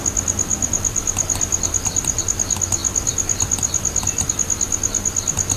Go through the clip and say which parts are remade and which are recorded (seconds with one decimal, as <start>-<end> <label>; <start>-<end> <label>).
0.0-0.5 recorded; 0.5-2.2 remade; 2.2-2.8 recorded; 2.8-4.3 remade; 4.3-5.6 recorded